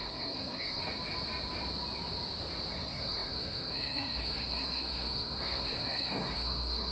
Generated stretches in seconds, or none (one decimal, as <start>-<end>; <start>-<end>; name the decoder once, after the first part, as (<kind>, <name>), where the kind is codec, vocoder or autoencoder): 0.0-0.8 (codec, SNAC); 2.7-6.9